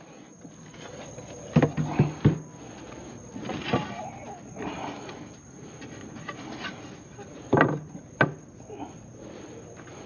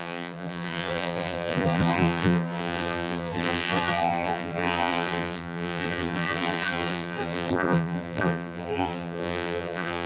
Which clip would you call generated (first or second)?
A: second